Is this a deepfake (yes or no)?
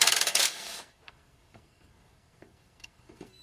yes